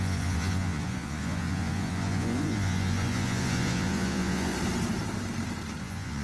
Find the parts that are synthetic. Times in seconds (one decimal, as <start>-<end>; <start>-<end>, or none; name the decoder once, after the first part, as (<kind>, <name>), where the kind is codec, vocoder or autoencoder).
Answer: 0.0-4.5 (vocoder, Vocos); 5.8-6.2